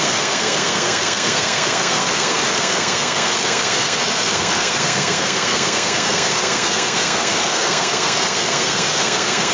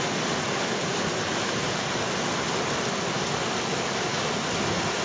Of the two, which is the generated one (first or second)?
first